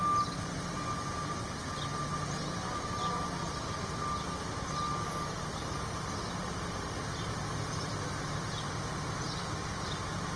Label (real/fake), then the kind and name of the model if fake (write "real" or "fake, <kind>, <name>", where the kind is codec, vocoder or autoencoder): real